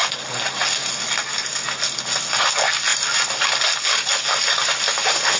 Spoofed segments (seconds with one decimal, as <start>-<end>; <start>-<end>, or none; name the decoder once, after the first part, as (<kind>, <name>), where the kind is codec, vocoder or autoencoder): none